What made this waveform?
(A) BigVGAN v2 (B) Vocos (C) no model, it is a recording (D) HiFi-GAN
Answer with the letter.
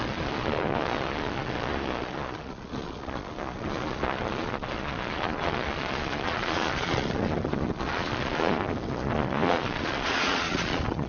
B